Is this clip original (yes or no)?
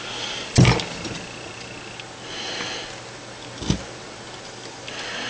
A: yes